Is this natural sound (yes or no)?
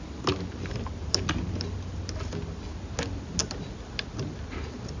yes